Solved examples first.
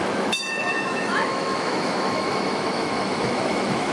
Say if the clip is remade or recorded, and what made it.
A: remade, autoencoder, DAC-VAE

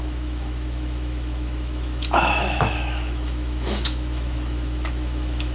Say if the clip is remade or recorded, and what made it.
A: remade, autoencoder, DAC-VAE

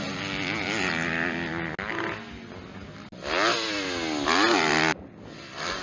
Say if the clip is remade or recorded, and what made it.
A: recorded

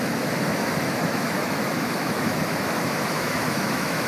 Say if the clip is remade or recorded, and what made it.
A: remade, autoencoder, DAC-VAE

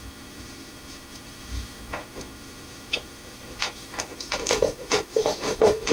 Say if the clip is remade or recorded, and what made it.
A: remade, autoencoder, DAC-VAE